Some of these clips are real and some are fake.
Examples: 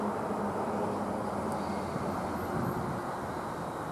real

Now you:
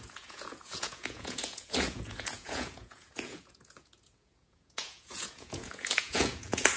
fake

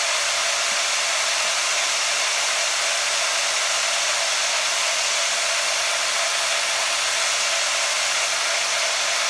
real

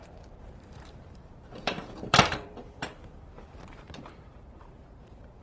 fake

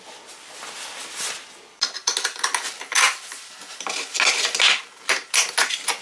real